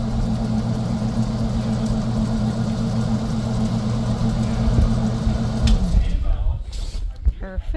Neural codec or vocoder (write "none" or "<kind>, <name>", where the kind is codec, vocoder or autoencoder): none